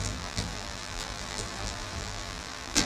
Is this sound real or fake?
fake